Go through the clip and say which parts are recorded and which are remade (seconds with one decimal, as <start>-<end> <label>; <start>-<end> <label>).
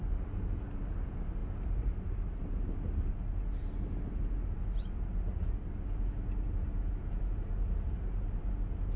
0.0-9.0 recorded